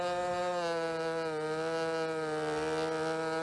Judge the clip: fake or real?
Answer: real